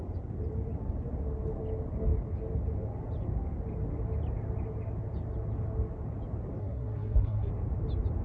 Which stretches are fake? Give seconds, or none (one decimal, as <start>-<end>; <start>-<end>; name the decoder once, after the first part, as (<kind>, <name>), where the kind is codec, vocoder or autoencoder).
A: 6.6-7.5 (codec, SNAC)